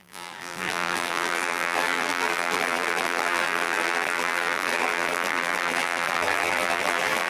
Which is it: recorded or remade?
remade